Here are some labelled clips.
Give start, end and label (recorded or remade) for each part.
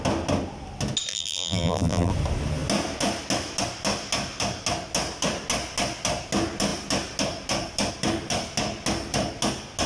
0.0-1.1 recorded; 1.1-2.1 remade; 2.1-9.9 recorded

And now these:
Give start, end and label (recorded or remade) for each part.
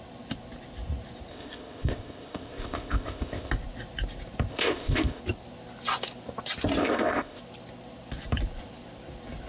0.0-1.3 recorded; 1.3-3.5 remade; 3.5-4.5 recorded; 4.5-5.2 remade; 5.2-6.8 recorded; 6.8-7.4 remade; 7.4-9.5 recorded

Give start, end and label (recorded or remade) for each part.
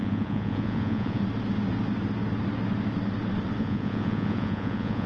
0.0-1.2 remade; 1.2-3.6 recorded; 3.6-5.1 remade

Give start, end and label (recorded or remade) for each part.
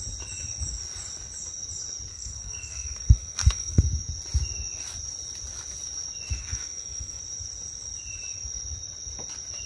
0.0-2.1 recorded; 2.1-3.8 remade; 3.8-6.4 recorded; 6.4-7.2 remade; 7.2-9.7 recorded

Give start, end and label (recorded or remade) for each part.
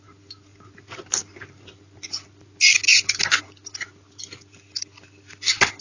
0.0-5.8 recorded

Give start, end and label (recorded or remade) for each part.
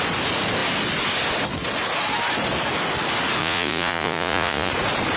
0.0-3.4 recorded; 3.4-4.7 remade; 4.7-5.2 recorded